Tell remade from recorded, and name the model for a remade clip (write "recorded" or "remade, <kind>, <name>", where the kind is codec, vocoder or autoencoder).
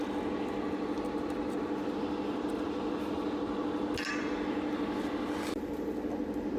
recorded